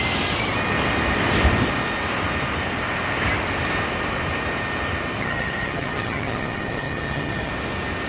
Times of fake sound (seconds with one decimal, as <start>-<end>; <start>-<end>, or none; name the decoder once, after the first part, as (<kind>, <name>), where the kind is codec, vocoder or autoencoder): 5.2-7.5 (vocoder, HiFi-GAN)